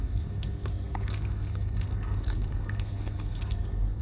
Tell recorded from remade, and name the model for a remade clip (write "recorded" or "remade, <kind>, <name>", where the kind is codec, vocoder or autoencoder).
remade, codec, SNAC